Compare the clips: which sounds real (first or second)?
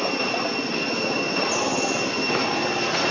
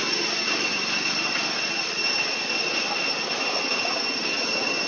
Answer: first